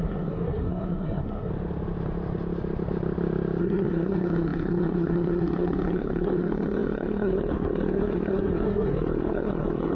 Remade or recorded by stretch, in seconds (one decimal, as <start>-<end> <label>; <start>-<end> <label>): 0.0-1.5 remade; 1.5-3.6 recorded; 3.6-9.9 remade